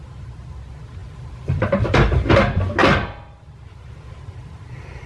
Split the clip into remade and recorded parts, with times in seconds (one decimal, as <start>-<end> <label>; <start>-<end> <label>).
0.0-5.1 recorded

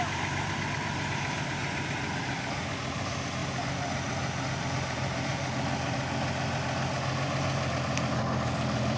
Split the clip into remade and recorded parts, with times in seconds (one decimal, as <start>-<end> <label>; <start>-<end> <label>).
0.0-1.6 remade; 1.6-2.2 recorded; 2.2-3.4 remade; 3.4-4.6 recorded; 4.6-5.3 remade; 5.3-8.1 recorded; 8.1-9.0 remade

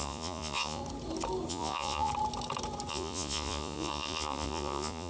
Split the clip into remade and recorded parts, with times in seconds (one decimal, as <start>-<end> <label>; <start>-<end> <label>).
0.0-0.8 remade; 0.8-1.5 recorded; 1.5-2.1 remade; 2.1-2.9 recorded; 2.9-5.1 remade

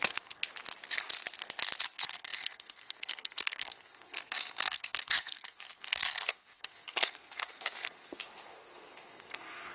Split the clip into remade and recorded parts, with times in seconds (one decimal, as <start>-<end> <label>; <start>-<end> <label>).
0.0-0.4 remade; 0.4-1.8 recorded; 1.8-9.7 remade